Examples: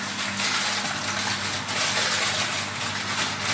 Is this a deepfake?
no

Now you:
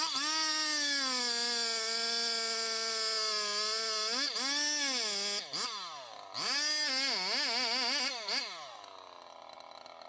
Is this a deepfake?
no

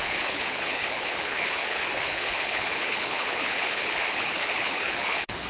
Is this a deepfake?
yes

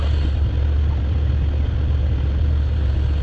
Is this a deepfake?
no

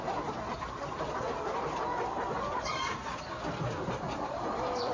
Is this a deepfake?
no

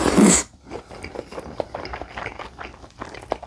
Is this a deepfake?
no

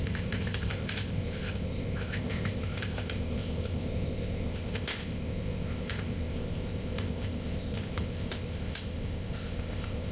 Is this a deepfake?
yes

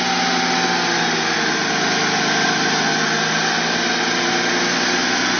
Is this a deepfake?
no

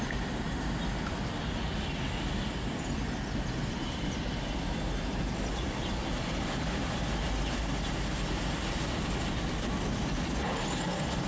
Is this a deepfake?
no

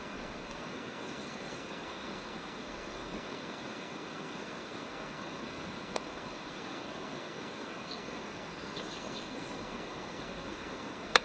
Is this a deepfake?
yes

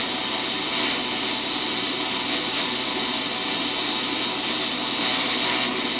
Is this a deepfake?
no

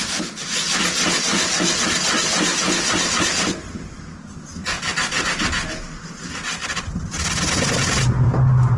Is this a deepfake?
no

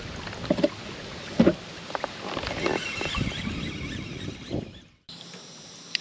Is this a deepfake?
no